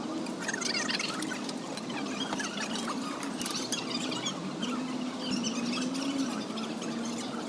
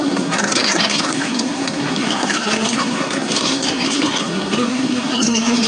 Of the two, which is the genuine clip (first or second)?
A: first